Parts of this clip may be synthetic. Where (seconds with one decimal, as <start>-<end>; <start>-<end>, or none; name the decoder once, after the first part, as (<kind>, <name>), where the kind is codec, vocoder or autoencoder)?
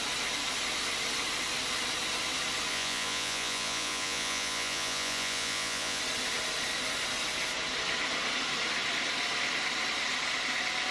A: 2.7-6.0 (vocoder, Vocos)